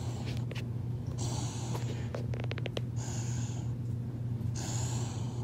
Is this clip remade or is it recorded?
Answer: recorded